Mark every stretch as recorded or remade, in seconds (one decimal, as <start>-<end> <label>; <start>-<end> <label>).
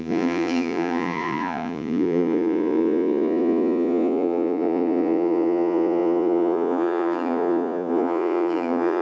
0.0-9.0 remade